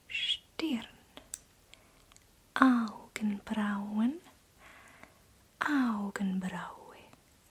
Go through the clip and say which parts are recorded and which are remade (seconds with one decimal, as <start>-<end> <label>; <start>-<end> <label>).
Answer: 0.0-1.7 remade; 1.7-7.5 recorded